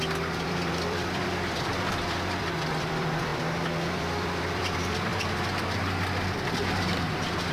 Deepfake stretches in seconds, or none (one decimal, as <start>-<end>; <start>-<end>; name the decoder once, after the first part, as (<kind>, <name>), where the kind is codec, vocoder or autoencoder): 0.0-3.3 (vocoder, BigVGAN v2); 3.9-5.1; 6.8-7.5